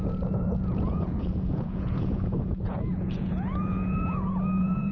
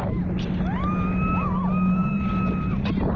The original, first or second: second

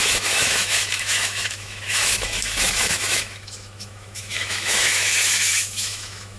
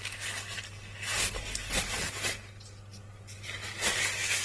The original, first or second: second